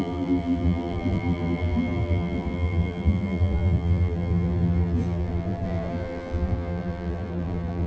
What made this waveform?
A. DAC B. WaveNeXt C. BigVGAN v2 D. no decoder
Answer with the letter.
C